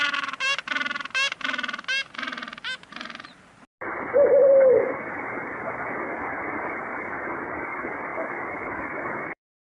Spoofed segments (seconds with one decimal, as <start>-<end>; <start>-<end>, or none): 4.7-9.7